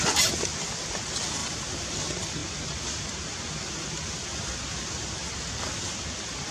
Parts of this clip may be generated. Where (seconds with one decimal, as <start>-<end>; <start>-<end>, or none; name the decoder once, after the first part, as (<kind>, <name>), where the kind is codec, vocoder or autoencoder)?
1.4-2.0 (vocoder, BigVGAN v2)